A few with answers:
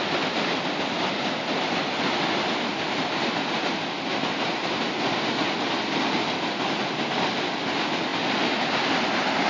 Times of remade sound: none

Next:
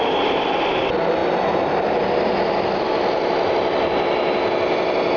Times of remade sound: none

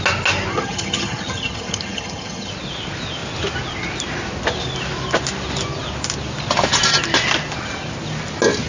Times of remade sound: 0.5-2.5 (vocoder, HiFi-GAN)